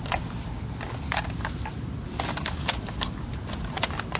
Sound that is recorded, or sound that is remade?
recorded